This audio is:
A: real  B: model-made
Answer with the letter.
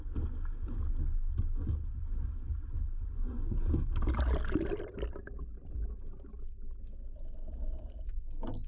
A